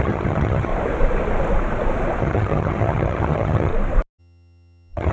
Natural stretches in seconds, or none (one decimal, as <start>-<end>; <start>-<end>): 0.7-2.2; 3.7-4.2